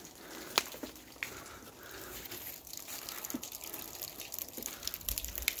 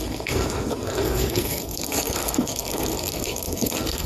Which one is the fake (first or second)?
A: second